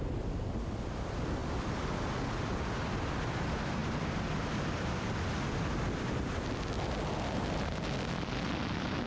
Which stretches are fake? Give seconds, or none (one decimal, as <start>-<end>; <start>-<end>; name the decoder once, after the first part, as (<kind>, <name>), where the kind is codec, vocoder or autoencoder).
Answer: none